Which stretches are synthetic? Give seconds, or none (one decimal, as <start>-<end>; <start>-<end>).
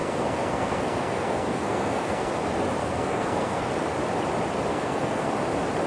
0.0-2.3; 2.8-3.7; 4.7-5.3